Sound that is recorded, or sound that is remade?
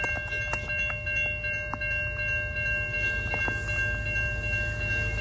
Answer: recorded